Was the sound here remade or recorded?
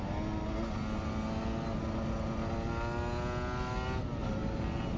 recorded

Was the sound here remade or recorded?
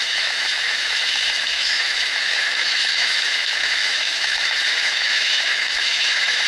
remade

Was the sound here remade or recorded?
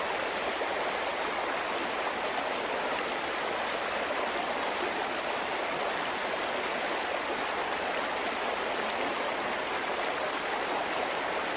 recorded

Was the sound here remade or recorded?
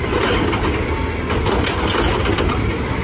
recorded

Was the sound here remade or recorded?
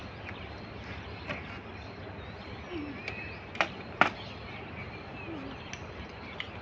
recorded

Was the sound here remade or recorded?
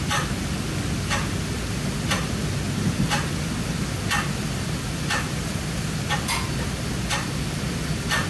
recorded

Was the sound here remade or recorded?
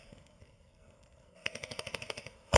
remade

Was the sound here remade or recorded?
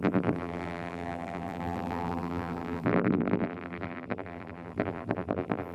remade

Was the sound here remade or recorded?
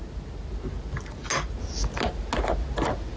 recorded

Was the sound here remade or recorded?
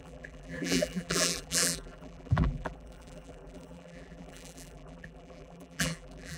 remade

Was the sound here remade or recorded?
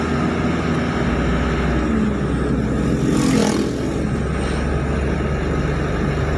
recorded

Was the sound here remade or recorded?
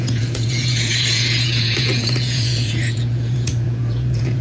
remade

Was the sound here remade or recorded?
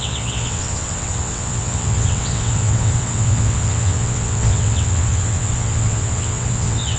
remade